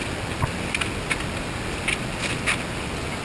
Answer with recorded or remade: recorded